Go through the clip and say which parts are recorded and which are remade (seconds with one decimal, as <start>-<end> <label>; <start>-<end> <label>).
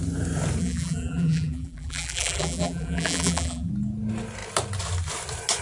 0.0-0.6 recorded; 0.6-3.7 remade; 3.7-5.6 recorded